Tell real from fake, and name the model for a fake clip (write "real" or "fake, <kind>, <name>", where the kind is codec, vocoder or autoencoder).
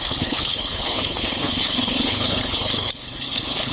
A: fake, codec, HILCodec